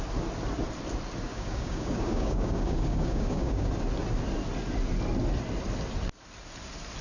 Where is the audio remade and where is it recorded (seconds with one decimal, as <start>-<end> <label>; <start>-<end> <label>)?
0.0-1.3 recorded; 1.3-3.7 remade; 3.7-7.0 recorded

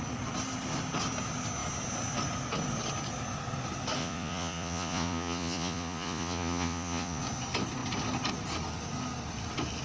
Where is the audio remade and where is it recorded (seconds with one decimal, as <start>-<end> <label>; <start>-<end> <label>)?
0.0-4.0 recorded; 4.0-7.2 remade; 7.2-9.8 recorded

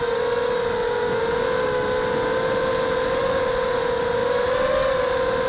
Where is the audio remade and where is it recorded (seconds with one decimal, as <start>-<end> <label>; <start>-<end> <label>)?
0.0-4.2 recorded; 4.2-4.7 remade; 4.7-5.5 recorded

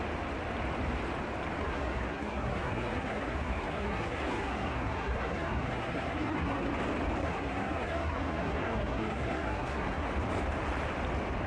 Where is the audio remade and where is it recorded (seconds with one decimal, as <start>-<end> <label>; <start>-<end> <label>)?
0.0-1.6 recorded; 1.6-6.7 remade; 6.7-7.2 recorded; 7.2-10.1 remade; 10.1-11.5 recorded

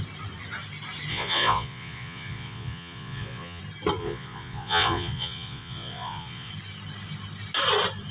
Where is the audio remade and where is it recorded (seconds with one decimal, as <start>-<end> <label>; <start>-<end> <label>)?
0.0-1.1 recorded; 1.1-3.6 remade; 3.6-4.0 recorded; 4.0-6.5 remade; 6.5-8.1 recorded